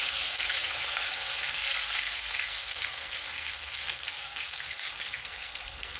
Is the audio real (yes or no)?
no